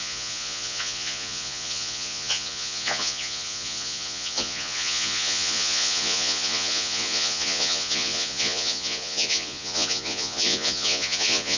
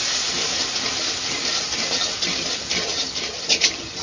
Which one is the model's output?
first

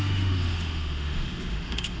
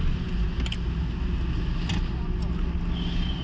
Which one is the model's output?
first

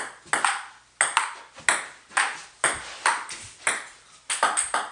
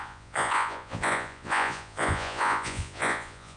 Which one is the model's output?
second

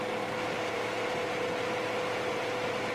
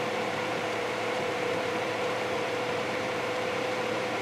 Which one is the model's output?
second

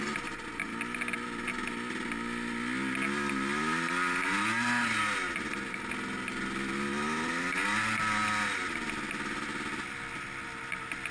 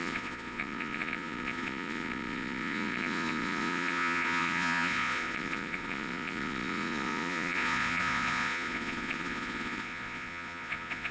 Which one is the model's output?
second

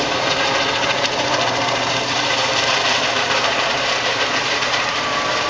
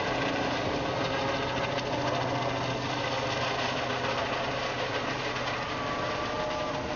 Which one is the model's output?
first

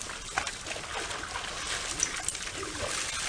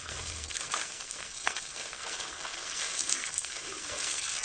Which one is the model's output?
second